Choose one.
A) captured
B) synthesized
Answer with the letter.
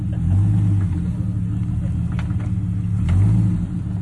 A